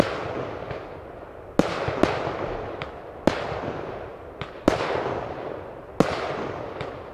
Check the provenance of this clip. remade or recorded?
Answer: recorded